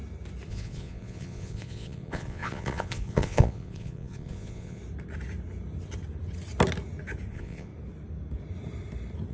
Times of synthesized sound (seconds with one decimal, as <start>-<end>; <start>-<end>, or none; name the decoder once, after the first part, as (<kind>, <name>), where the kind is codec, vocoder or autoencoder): 0.5-4.8 (vocoder, Vocos); 7.3-7.7